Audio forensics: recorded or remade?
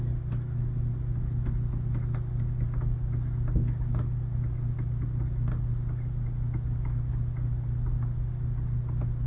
recorded